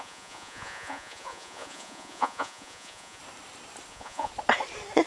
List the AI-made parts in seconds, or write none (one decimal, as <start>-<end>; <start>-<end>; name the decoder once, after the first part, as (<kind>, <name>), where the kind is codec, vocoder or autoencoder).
0.0-3.2 (vocoder, Vocos); 3.9-4.3